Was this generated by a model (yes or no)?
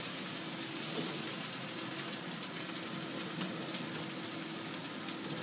no